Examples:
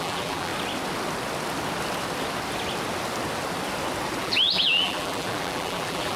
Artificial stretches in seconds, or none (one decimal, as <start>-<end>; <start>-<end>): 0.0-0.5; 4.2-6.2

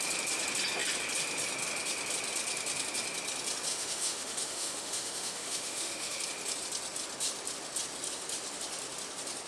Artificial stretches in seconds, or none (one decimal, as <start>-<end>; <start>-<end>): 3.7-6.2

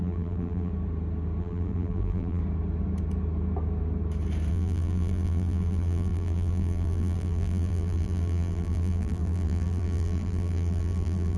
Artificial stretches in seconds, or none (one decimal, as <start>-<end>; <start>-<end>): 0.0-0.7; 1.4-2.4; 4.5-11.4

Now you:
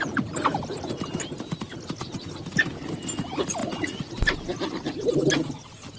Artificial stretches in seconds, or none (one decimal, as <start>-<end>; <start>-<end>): 3.6-4.1